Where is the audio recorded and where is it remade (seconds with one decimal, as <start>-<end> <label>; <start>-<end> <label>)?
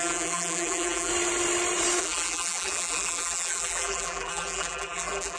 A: 0.0-1.1 remade; 1.1-2.0 recorded; 2.0-5.4 remade